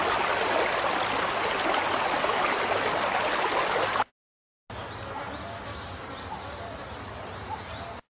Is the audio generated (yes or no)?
no